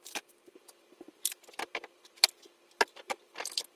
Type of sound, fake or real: fake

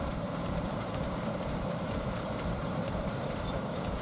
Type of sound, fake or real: fake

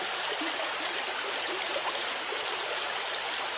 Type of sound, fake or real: real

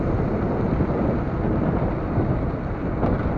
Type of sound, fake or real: real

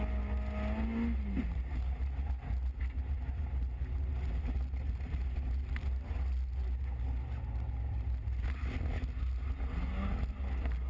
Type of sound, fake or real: real